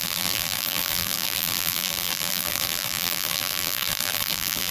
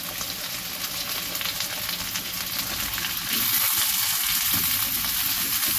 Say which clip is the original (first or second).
second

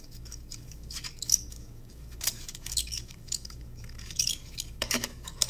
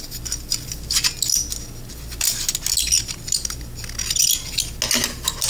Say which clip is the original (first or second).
second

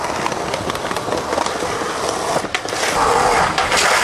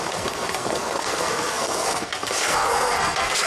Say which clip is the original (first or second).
first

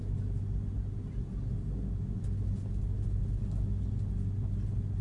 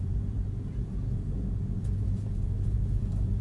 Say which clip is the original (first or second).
first